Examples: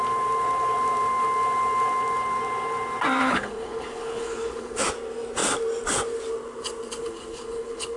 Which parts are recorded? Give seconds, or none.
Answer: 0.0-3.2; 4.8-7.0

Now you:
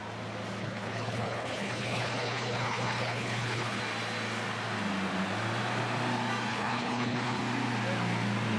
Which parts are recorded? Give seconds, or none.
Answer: 0.0-0.6; 3.8-6.5; 7.4-8.6

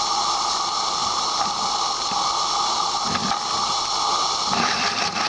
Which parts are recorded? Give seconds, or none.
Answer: 0.0-5.3

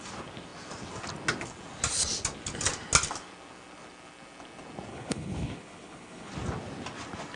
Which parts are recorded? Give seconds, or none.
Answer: 0.0-4.9; 6.3-7.4

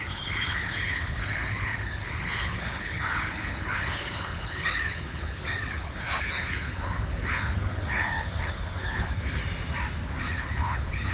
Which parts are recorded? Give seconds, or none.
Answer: 9.4-10.2

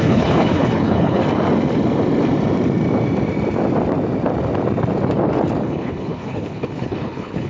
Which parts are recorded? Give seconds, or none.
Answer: 1.2-5.6